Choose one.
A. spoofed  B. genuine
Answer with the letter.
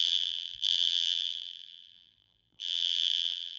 A